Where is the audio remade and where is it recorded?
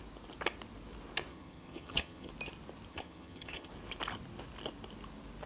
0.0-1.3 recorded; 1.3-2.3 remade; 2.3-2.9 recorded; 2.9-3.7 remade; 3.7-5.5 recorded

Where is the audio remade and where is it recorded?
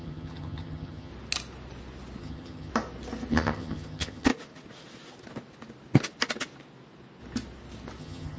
0.0-1.1 remade; 1.1-2.2 recorded; 2.2-2.7 remade; 2.7-3.3 recorded; 3.3-4.3 remade; 4.3-8.0 recorded; 8.0-8.4 remade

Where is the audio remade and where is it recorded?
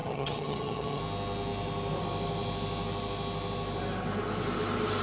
0.0-1.0 remade; 1.0-5.0 recorded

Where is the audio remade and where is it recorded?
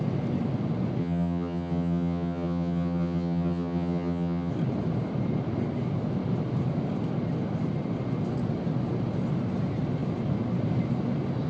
0.0-1.0 recorded; 1.0-4.5 remade; 4.5-11.5 recorded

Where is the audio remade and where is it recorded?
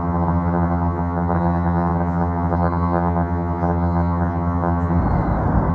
0.0-5.0 remade; 5.0-5.7 recorded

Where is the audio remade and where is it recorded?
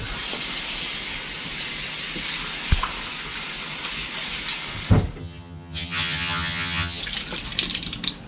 0.0-5.2 recorded; 5.2-7.0 remade; 7.0-8.3 recorded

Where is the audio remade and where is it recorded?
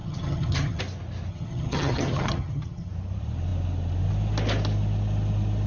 0.0-0.8 remade; 0.8-1.3 recorded; 1.3-2.9 remade; 2.9-5.7 recorded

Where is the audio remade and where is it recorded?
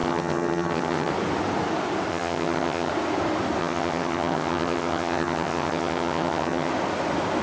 0.0-1.1 remade; 1.1-2.1 recorded; 2.1-2.9 remade; 2.9-3.6 recorded; 3.6-6.7 remade; 6.7-7.4 recorded